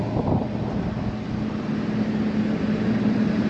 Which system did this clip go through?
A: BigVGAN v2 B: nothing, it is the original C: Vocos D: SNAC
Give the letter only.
B